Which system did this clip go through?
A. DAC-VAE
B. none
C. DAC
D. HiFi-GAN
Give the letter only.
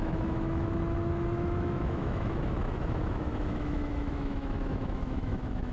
A